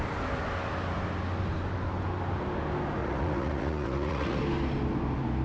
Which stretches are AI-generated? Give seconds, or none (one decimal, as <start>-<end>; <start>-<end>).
3.0-4.4